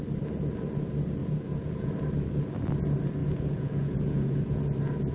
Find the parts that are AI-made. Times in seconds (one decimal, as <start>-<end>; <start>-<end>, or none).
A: 1.2-1.9; 3.2-4.6